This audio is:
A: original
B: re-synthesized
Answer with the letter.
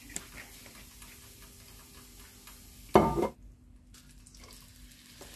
A